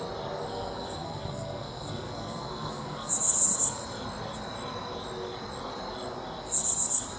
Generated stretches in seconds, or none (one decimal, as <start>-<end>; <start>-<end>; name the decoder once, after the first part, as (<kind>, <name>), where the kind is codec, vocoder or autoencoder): 0.5-3.1 (codec, SNAC)